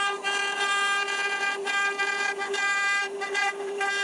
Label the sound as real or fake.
fake